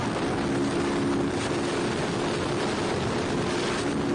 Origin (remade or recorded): recorded